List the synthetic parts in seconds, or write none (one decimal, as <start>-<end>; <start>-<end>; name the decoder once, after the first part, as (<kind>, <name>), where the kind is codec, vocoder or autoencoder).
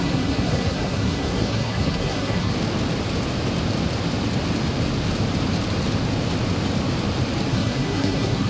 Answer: 0.0-2.5 (codec, SNAC); 7.5-8.5